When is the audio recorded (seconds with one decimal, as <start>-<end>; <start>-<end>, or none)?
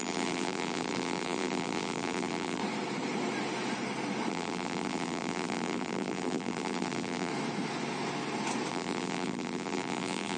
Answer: 2.6-4.3; 7.3-8.7